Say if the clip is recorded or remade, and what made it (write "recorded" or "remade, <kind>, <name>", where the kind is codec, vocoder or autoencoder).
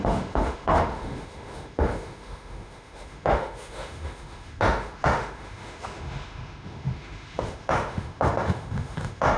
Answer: remade, autoencoder, DAC-VAE